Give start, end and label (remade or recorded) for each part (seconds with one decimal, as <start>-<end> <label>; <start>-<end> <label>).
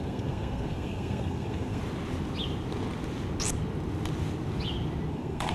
0.0-1.8 remade; 1.8-5.1 recorded; 5.1-5.5 remade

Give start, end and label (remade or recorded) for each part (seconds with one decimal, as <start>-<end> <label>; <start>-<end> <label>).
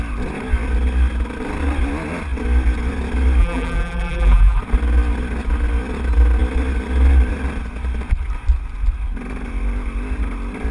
0.0-3.4 recorded; 3.4-4.6 remade; 4.6-10.7 recorded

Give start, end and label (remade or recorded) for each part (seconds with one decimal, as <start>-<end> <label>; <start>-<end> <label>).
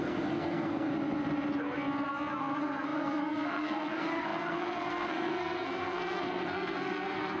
0.0-0.9 remade; 0.9-2.4 recorded; 2.4-7.4 remade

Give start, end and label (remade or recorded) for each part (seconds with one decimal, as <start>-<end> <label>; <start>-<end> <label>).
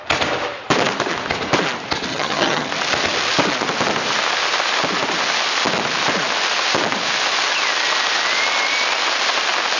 0.0-2.1 recorded; 2.1-2.7 remade; 2.7-9.8 recorded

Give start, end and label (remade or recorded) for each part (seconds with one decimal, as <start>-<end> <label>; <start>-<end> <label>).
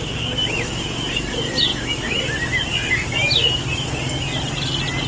0.0-1.7 recorded; 1.7-2.2 remade; 2.2-5.1 recorded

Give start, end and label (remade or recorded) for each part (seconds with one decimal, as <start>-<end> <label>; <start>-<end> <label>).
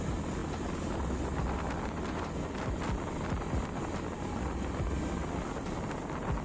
0.0-5.2 recorded; 5.2-5.7 remade; 5.7-6.4 recorded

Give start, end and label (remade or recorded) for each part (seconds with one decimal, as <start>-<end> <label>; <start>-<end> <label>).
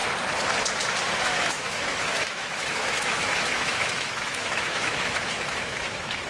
0.0-1.2 recorded; 1.2-6.3 remade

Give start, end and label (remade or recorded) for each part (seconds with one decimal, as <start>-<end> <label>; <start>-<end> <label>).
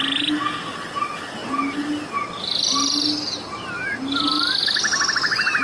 0.0-5.6 recorded